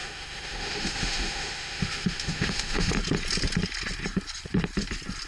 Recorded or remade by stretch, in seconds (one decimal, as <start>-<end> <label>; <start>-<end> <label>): 0.0-2.9 remade; 2.9-5.3 recorded